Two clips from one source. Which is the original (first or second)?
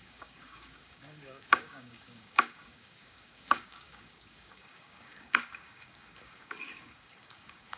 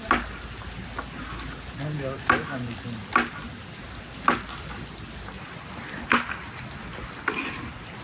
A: second